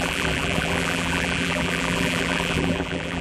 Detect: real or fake fake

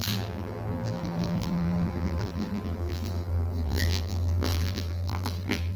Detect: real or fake fake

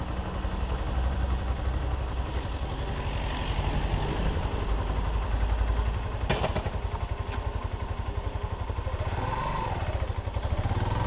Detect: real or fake real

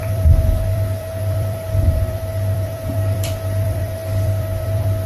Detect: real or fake fake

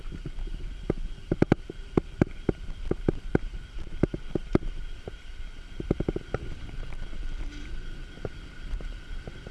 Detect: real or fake fake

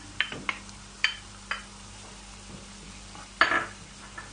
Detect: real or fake fake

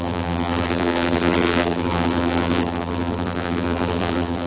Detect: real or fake fake